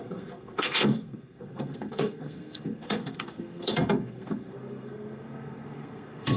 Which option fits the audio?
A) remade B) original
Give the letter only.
A